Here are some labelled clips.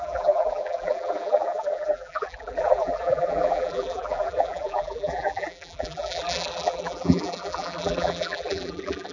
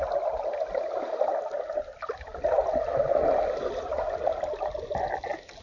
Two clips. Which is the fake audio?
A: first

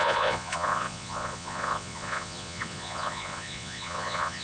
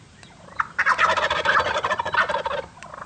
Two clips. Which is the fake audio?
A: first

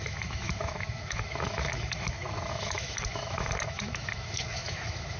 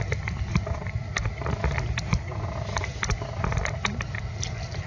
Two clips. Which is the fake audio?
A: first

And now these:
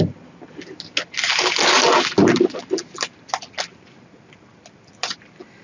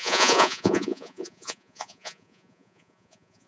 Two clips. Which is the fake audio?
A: second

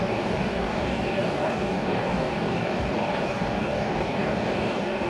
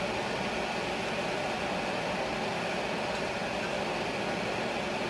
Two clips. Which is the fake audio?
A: first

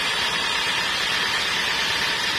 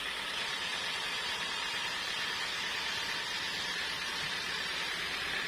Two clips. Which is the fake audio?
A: first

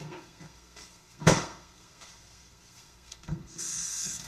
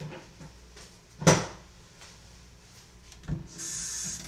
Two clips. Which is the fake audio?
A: first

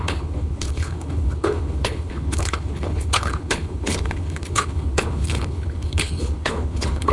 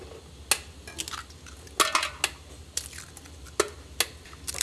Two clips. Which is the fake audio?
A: first